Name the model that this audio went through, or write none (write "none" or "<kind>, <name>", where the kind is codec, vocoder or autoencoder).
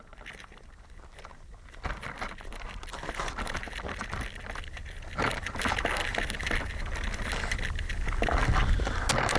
none